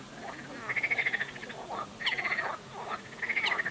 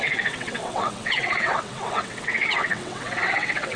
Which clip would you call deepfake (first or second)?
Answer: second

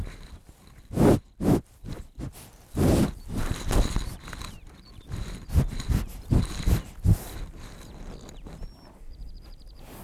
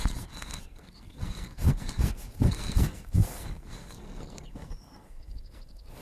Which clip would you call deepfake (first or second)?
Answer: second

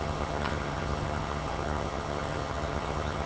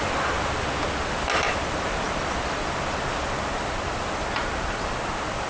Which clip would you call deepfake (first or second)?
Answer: first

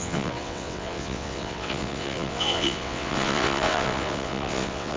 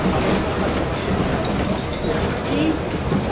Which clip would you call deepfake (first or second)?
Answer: first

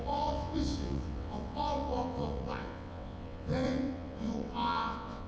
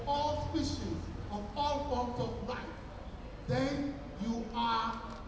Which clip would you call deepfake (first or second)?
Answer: first